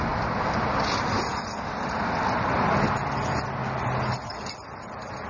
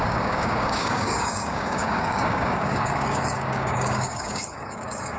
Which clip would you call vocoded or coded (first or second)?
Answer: second